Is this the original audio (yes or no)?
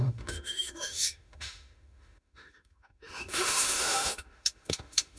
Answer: no